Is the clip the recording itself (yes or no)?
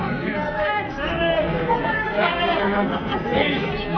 no